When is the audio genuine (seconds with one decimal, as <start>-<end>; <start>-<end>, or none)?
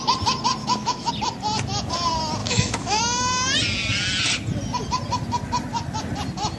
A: 0.0-0.6; 1.1-2.4; 3.0-6.6